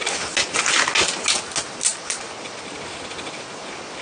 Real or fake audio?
real